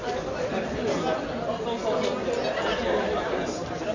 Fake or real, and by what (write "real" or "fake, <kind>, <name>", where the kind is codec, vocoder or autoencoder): real